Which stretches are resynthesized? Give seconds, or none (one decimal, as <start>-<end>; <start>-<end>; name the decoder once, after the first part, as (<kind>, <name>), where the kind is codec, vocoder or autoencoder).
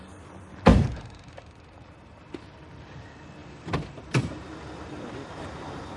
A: 0.7-2.7 (vocoder, BigVGAN v2); 3.4-4.5